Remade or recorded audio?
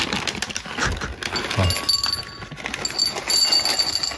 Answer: recorded